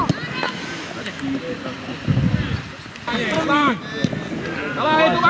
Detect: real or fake real